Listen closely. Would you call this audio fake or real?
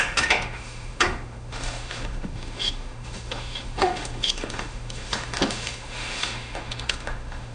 fake